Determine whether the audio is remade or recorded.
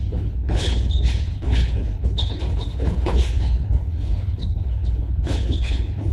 remade